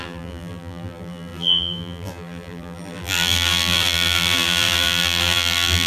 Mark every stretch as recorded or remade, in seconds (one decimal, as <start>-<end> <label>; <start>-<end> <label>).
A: 0.0-5.9 remade